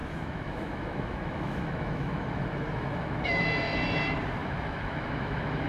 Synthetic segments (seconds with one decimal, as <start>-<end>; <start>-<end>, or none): 0.0-3.4; 4.4-5.7